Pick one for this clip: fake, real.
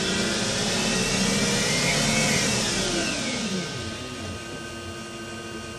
real